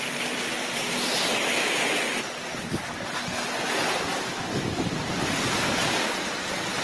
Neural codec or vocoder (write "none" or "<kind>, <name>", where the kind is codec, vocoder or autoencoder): none